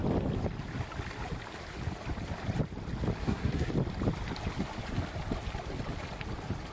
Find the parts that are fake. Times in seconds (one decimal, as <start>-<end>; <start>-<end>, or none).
3.2-3.7